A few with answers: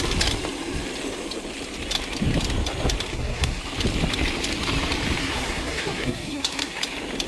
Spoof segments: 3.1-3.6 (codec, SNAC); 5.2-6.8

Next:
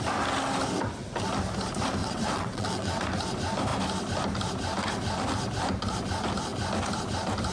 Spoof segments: 2.0-3.0 (vocoder, WaveNeXt)

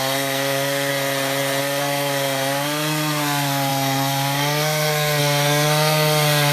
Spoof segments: 0.0-0.9 (codec, SNAC); 1.6-6.5

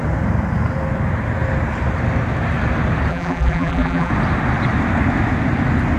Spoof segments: 3.1-4.1 (vocoder, BigVGAN v2)

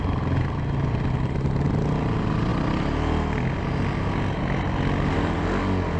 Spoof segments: none

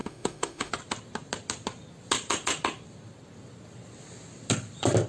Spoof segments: 0.0-0.7 (autoencoder, DAC-VAE)

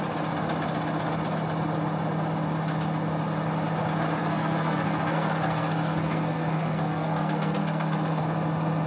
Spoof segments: 4.2-8.2 (codec, SNAC)

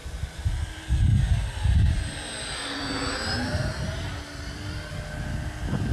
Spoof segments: 0.0-0.9 (vocoder, BigVGAN v2); 1.8-4.9